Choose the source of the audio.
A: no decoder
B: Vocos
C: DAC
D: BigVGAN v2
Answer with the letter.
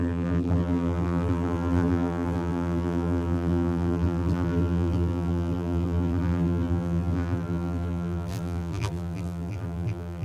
D